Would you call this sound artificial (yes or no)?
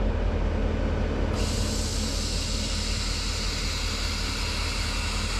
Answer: no